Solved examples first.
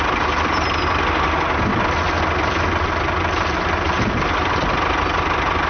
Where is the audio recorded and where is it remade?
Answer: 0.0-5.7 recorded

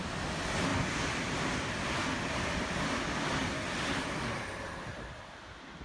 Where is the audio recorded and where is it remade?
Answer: 0.0-5.8 recorded

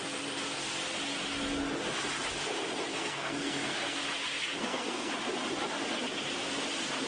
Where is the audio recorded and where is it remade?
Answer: 0.0-2.9 recorded; 2.9-4.0 remade; 4.0-4.6 recorded; 4.6-5.1 remade; 5.1-7.1 recorded